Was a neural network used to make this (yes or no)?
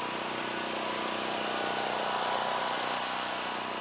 no